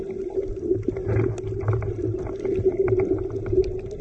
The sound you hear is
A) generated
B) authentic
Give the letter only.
B